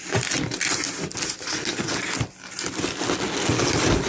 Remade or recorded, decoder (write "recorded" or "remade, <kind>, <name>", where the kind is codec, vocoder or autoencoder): recorded